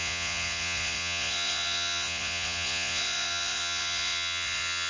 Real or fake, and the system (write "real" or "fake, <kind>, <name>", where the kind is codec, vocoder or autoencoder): fake, vocoder, Vocos